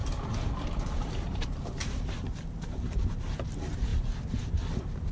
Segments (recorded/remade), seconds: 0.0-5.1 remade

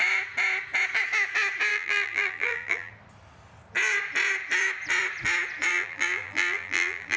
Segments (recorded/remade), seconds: 0.0-1.7 recorded; 1.7-2.9 remade; 2.9-5.7 recorded; 5.7-7.2 remade

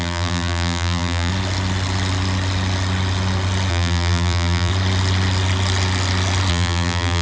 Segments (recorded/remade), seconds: 0.0-1.3 remade; 1.3-3.7 recorded; 3.7-4.7 remade; 4.7-6.5 recorded; 6.5-7.2 remade

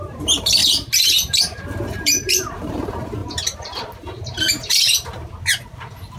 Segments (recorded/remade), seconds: 0.0-0.6 remade; 0.6-1.9 recorded; 1.9-6.2 remade

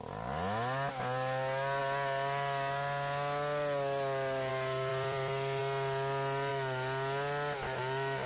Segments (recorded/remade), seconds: 0.0-4.9 recorded; 4.9-5.6 remade; 5.6-8.3 recorded

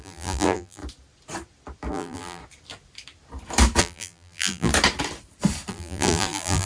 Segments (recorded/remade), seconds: 0.0-0.8 remade; 0.8-1.9 recorded; 1.9-2.4 remade; 2.4-3.8 recorded; 3.8-4.7 remade; 4.7-5.7 recorded; 5.7-6.7 remade

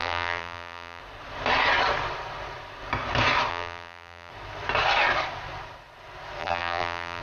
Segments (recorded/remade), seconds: 0.0-1.0 remade; 1.0-3.5 recorded; 3.5-4.3 remade; 4.3-6.4 recorded; 6.4-7.2 remade